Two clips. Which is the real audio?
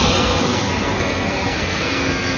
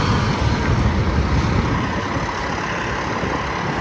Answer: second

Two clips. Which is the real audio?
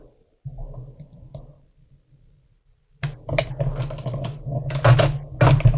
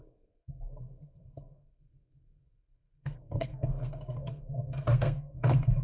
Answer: first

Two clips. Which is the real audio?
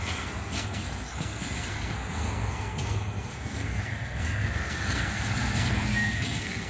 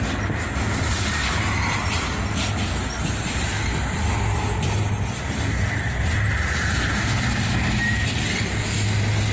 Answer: second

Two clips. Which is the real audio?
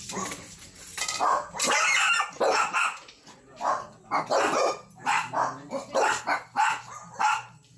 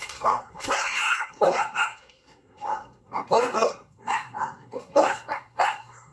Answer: first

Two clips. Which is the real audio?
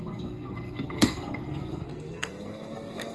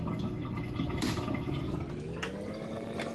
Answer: second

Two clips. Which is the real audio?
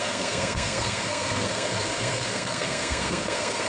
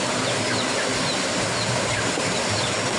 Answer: second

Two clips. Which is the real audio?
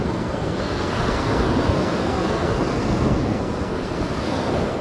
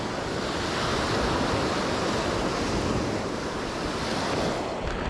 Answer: second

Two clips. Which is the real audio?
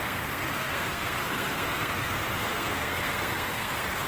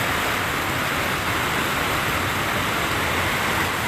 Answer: second